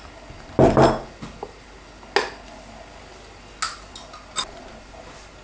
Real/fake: real